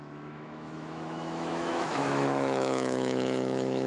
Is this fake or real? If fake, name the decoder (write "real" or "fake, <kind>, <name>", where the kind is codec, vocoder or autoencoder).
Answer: fake, autoencoder, DAC-VAE